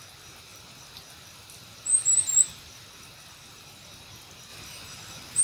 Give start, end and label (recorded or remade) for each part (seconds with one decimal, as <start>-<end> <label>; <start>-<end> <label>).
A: 0.0-5.4 recorded